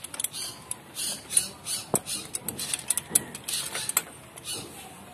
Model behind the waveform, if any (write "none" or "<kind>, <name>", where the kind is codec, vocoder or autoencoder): none